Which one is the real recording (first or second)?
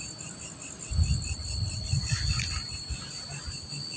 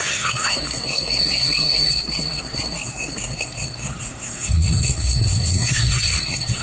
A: first